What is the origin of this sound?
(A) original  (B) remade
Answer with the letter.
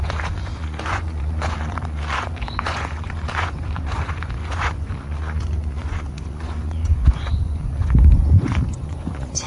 B